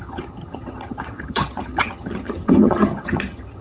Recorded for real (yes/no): no